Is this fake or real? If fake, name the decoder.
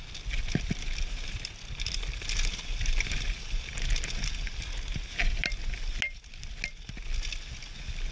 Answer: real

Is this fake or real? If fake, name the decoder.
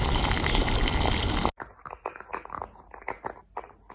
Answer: real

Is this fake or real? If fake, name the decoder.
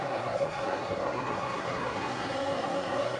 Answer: fake, codec, SNAC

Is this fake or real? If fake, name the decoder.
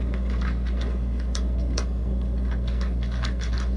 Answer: fake, codec, SNAC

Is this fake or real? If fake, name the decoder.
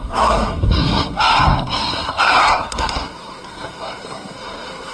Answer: fake, codec, SNAC